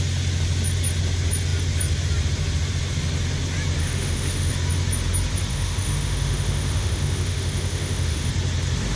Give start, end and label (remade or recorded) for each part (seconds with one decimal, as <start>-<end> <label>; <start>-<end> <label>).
0.0-3.8 recorded; 3.8-4.5 remade; 4.5-5.5 recorded; 5.5-8.3 remade; 8.3-9.0 recorded